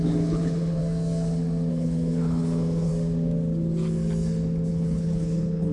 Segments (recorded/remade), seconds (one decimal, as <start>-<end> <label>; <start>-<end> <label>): 0.0-0.8 remade; 0.8-1.7 recorded; 1.7-2.9 remade; 2.9-4.7 recorded; 4.7-5.7 remade

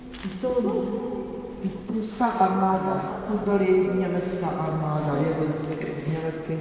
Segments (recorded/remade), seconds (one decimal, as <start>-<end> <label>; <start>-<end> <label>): 0.0-1.8 recorded; 1.8-3.5 remade; 3.5-6.6 recorded

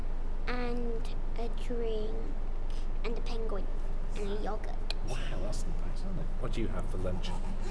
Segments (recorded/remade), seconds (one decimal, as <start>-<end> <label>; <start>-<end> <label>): 0.0-7.7 recorded

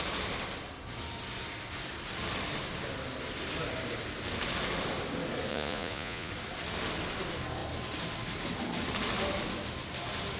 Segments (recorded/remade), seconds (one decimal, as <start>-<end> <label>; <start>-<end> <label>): 0.0-5.5 recorded; 5.5-6.3 remade; 6.3-10.4 recorded

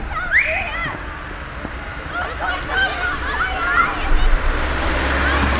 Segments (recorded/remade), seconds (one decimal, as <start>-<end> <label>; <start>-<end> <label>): 0.0-5.6 recorded

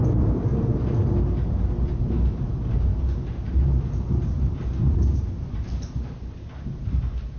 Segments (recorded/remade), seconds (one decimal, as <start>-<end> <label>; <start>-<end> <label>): 0.0-0.5 remade; 0.5-2.0 recorded; 2.0-7.4 remade